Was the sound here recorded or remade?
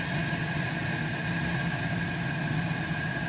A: recorded